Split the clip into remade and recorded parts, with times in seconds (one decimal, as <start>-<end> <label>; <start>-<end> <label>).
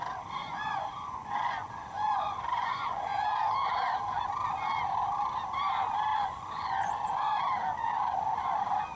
0.0-0.4 recorded; 0.4-3.0 remade; 3.0-6.1 recorded; 6.1-7.4 remade; 7.4-9.0 recorded